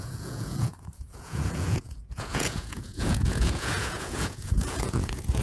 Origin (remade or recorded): remade